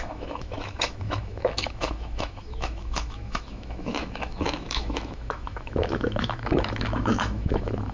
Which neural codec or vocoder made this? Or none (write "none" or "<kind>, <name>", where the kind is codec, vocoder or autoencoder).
autoencoder, DAC-VAE